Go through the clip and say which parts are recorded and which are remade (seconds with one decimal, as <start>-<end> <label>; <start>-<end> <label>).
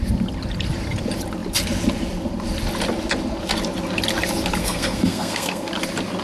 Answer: 0.0-4.6 recorded; 4.6-5.7 remade; 5.7-6.2 recorded